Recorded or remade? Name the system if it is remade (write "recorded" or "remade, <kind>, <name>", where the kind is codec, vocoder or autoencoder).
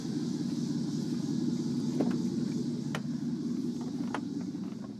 recorded